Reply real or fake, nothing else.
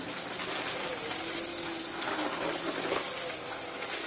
real